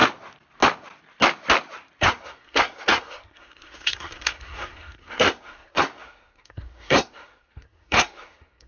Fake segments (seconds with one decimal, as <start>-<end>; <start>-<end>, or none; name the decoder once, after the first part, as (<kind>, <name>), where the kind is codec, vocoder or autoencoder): 2.0-8.7 (codec, SNAC)